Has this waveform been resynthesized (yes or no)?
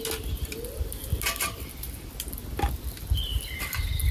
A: no